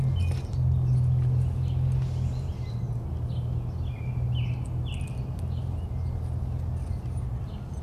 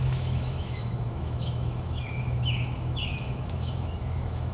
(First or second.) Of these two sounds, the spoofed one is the second